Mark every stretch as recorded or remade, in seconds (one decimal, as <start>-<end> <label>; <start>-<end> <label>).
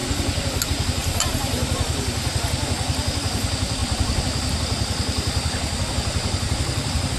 0.0-1.0 recorded; 1.0-2.4 remade; 2.4-7.2 recorded